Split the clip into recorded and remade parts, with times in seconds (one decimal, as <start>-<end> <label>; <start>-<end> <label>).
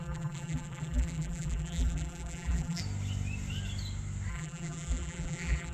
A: 0.0-2.8 remade; 2.8-4.3 recorded; 4.3-5.7 remade